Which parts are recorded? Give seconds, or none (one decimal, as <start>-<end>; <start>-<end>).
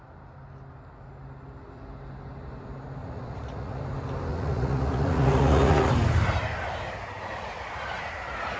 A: 0.0-3.0; 3.8-4.3; 5.9-8.6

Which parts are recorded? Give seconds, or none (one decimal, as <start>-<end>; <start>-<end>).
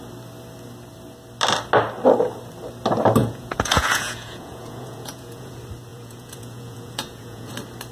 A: 0.0-3.2; 5.5-5.9; 7.5-7.9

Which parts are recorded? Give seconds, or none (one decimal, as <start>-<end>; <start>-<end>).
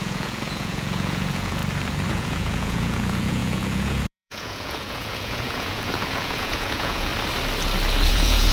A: 1.6-2.1; 7.1-8.1